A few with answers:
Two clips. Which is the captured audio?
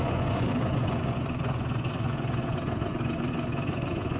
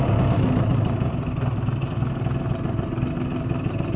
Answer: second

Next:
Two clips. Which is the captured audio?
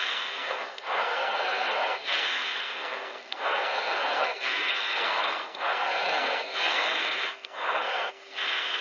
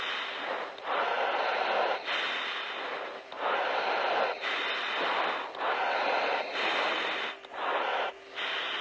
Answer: second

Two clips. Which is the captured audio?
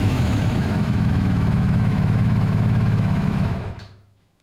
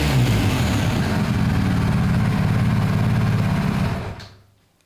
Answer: second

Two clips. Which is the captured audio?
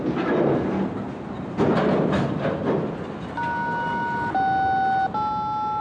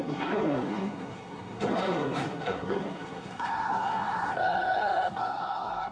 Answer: first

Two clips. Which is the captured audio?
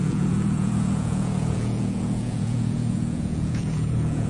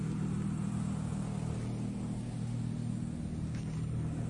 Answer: second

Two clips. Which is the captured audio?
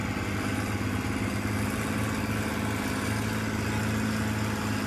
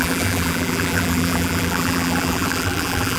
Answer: first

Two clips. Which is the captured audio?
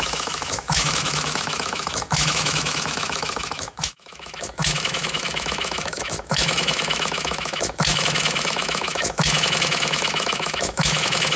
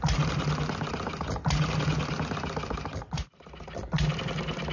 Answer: second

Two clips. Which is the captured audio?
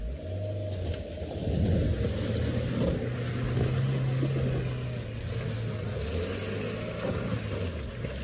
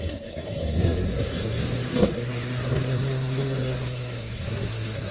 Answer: first